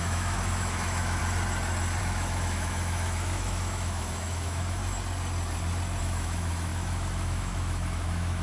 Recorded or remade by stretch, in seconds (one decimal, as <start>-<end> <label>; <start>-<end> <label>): 0.0-1.2 remade; 1.2-2.0 recorded; 2.0-4.8 remade; 4.8-6.0 recorded; 6.0-8.4 remade